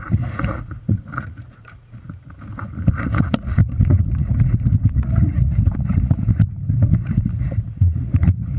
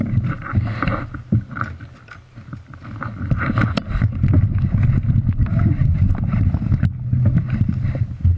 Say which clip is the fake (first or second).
first